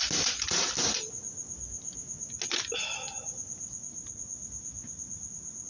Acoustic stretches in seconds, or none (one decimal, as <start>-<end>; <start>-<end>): 0.0-5.7